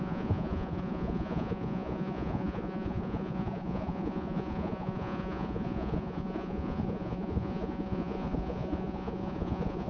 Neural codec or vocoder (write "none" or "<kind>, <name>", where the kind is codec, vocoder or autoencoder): vocoder, Vocos